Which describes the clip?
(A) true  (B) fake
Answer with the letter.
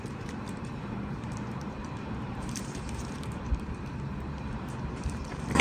B